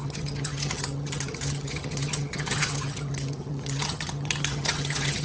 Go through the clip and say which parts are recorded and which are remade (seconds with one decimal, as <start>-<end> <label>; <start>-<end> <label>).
0.0-5.2 remade